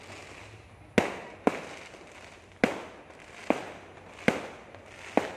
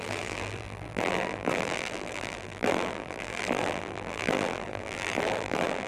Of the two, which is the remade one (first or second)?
second